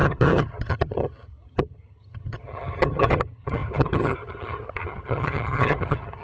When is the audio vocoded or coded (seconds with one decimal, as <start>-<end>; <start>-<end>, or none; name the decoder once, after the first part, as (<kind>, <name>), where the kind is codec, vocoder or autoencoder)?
0.0-6.2 (vocoder, HiFi-GAN)